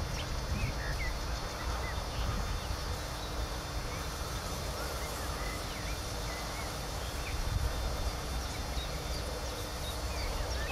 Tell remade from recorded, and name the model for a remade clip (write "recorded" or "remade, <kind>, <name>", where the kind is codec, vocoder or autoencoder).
recorded